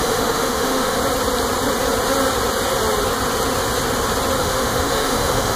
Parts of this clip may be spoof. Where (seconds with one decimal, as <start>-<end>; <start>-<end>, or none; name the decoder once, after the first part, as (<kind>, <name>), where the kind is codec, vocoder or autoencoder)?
0.0-1.0 (autoencoder, DAC-VAE); 4.4-5.6